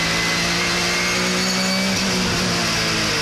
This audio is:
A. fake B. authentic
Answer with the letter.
B